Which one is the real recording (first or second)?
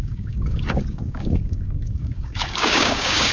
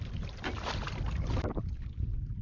second